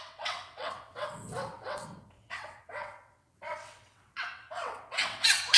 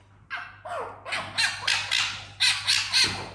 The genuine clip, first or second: second